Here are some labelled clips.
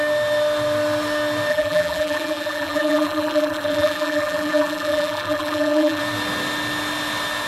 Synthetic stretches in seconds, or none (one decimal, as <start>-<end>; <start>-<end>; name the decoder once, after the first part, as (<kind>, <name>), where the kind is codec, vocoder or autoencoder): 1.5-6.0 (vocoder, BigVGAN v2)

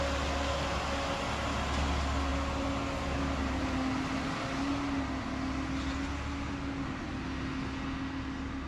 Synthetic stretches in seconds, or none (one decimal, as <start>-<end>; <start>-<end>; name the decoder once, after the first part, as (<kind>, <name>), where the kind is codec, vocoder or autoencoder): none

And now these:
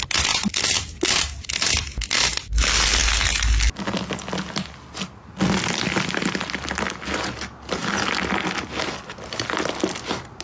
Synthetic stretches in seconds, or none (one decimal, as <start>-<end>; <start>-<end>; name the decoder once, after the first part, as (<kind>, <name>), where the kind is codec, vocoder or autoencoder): none

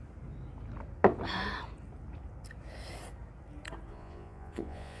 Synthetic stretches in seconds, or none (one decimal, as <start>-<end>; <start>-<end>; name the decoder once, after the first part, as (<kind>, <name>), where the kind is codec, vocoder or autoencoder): 3.9-5.0 (vocoder, Vocos)